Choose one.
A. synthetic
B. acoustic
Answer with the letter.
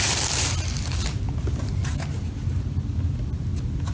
B